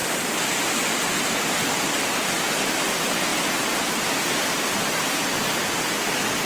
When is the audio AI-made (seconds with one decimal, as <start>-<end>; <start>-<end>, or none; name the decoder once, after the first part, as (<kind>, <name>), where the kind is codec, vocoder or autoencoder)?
3.3-4.6 (vocoder, BigVGAN v2)